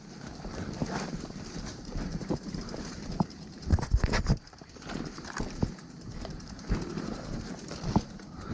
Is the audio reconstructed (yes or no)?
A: yes